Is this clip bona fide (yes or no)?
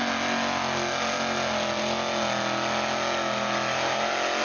yes